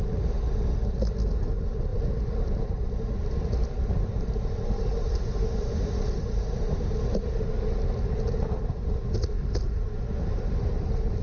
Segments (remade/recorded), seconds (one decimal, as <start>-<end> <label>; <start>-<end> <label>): 0.0-3.6 recorded; 3.6-6.6 remade; 6.6-11.2 recorded